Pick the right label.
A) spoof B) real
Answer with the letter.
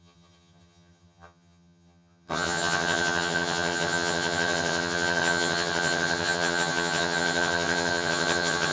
A